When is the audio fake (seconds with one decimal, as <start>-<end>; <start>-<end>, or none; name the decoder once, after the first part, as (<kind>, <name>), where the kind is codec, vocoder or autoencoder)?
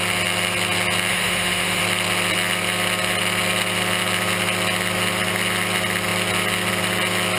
1.1-1.8 (autoencoder, DAC-VAE)